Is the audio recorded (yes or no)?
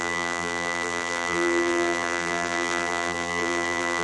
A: no